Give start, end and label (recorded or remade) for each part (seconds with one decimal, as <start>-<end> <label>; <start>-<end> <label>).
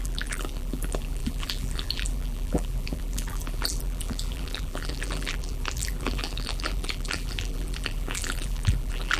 0.0-9.2 remade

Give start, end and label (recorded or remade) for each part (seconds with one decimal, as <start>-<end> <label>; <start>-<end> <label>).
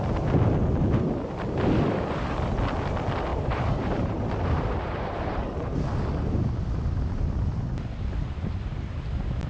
0.0-3.3 recorded; 3.3-5.9 remade; 5.9-9.5 recorded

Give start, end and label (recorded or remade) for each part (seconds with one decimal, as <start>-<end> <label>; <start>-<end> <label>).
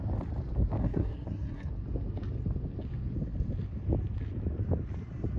0.0-0.8 recorded; 0.8-1.7 remade; 1.7-5.4 recorded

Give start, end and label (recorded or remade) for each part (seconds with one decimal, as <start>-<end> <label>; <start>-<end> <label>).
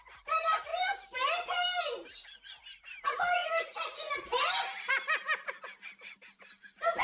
0.0-7.0 recorded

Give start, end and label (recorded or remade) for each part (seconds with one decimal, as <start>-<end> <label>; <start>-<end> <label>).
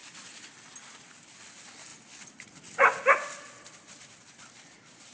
0.0-5.1 recorded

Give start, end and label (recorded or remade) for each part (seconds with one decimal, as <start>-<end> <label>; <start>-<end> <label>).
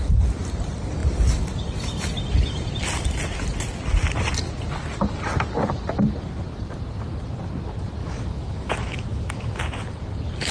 0.0-8.0 recorded; 8.0-9.6 remade; 9.6-10.5 recorded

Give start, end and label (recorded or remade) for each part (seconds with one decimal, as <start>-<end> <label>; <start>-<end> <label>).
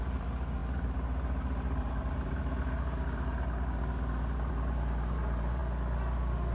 0.0-5.6 remade; 5.6-6.5 recorded